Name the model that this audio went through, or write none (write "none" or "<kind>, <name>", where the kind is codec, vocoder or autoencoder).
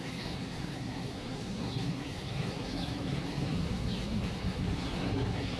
codec, SNAC